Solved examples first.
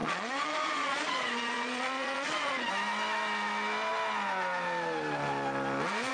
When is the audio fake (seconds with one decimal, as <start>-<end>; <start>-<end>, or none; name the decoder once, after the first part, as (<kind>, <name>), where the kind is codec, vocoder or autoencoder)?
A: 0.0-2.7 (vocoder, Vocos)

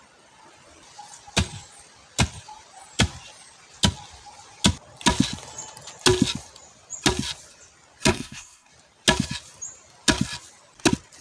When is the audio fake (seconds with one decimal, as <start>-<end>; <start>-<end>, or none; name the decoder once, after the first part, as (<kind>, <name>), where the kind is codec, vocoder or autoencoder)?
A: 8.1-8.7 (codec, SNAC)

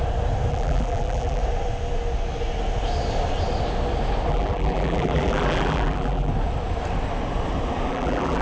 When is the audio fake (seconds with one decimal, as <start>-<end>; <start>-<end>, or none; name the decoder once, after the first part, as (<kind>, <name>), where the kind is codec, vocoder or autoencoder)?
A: 0.5-1.4 (vocoder, BigVGAN v2); 4.3-6.3; 7.9-8.4

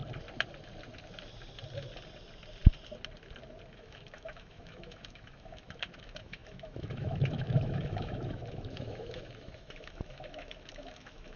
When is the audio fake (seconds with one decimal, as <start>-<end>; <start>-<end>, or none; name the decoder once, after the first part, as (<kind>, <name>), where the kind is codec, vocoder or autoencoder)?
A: 3.7-11.4 (autoencoder, DAC-VAE)